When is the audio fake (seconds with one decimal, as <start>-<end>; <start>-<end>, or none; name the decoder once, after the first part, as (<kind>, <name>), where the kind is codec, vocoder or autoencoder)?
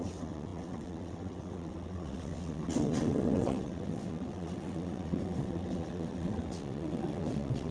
0.0-7.7 (vocoder, WaveNeXt)